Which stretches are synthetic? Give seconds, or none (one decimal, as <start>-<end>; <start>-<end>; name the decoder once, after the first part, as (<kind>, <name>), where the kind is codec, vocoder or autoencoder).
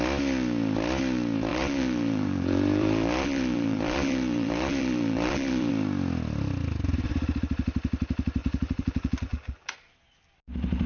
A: 1.5-5.7 (vocoder, BigVGAN v2); 8.4-9.7